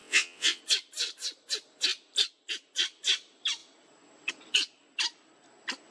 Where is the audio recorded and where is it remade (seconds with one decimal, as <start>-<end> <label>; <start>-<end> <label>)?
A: 0.0-0.6 remade; 0.6-5.9 recorded